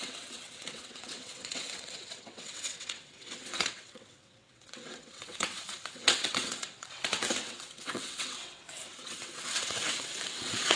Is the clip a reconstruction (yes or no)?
yes